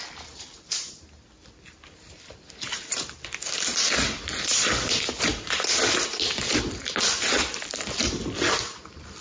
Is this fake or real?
real